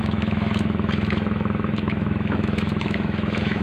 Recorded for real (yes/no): no